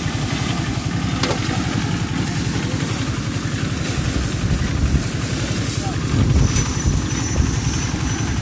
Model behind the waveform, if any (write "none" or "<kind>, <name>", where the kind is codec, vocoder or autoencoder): none